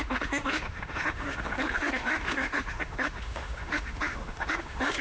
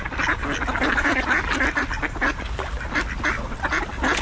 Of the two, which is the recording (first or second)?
second